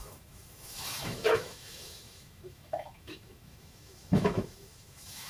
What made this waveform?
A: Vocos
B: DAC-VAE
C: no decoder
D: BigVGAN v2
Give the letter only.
B